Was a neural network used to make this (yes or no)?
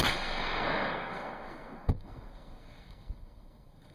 yes